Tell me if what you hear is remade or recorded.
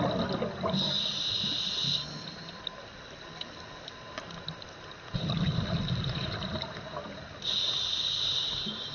recorded